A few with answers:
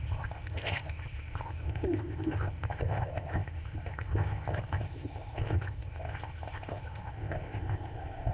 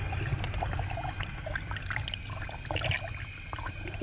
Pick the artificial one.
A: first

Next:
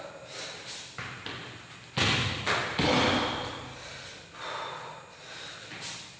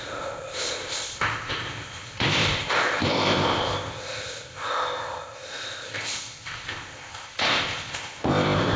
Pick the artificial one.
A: second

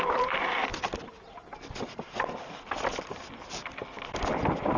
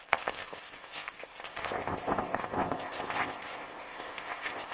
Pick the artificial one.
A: second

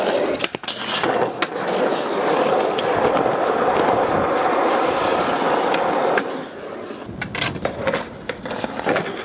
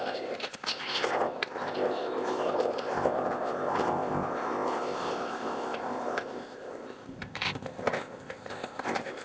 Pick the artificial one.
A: second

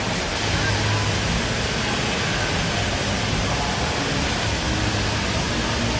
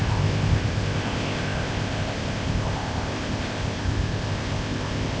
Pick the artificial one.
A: second